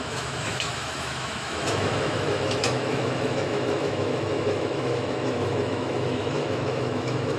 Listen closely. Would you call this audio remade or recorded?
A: remade